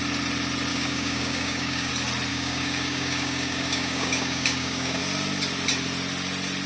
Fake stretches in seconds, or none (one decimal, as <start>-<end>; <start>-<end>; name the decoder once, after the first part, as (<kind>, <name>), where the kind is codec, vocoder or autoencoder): 0.7-1.9 (codec, DAC); 2.3-5.0